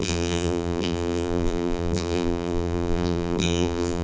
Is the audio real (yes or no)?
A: no